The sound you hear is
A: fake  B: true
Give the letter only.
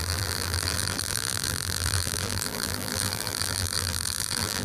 A